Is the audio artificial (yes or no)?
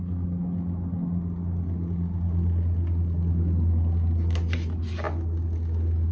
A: no